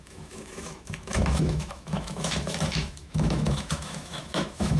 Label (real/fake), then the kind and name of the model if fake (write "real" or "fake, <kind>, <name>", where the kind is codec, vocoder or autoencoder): fake, autoencoder, DAC-VAE